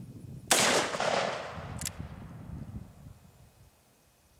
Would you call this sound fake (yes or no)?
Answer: no